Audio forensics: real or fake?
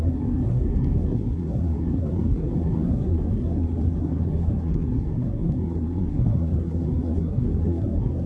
fake